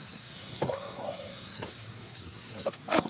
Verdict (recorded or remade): remade